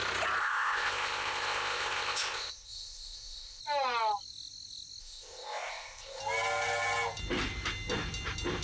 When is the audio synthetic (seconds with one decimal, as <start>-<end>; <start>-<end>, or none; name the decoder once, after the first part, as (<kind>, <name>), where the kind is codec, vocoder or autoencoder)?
0.4-3.6 (codec, ZipCodec); 5.0-6.2